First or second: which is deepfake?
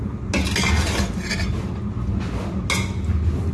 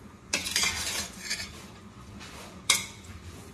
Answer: second